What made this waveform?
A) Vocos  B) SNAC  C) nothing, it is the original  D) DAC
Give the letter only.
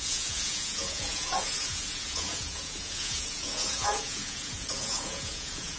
A